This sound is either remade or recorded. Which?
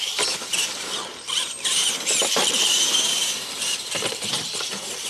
remade